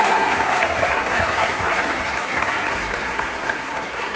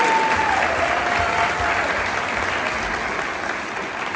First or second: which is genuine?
second